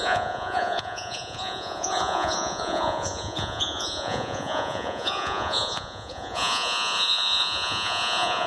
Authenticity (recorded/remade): remade